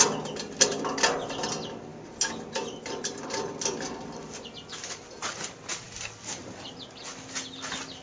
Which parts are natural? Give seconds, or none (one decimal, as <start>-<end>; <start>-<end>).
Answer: 0.0-8.0